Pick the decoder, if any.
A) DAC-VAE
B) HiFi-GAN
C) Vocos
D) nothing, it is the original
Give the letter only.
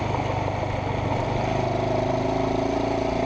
D